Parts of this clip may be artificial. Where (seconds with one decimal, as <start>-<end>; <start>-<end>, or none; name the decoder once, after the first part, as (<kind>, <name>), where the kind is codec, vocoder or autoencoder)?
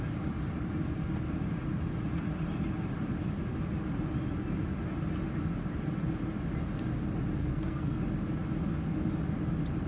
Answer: 7.4-8.0 (codec, SNAC)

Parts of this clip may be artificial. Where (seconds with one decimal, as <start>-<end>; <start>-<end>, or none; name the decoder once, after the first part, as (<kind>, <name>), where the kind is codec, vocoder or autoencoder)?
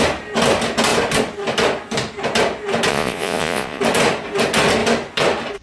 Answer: 2.9-3.8 (vocoder, Vocos)